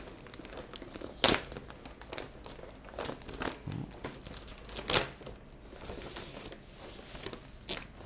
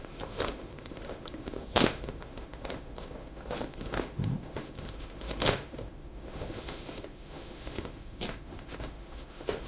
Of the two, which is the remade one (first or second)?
second